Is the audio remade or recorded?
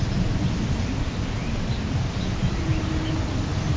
recorded